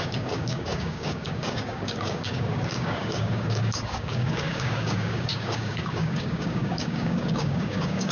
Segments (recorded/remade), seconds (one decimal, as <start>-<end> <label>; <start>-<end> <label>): 0.0-8.1 remade